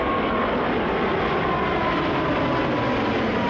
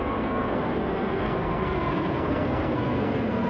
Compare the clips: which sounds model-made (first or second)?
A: second